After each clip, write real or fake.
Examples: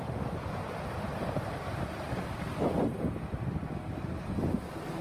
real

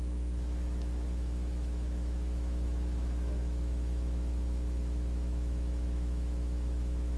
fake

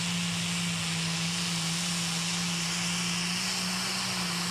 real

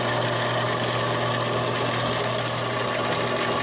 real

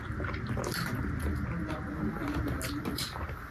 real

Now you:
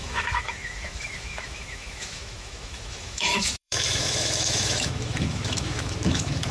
fake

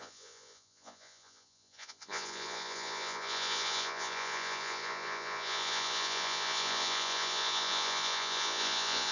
fake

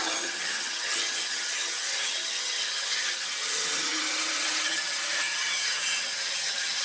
fake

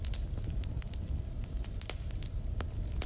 real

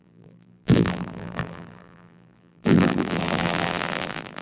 fake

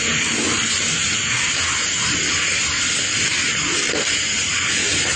real